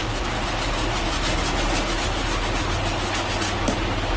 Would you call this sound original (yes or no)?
yes